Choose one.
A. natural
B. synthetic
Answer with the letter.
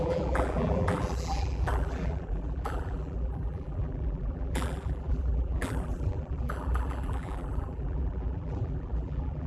B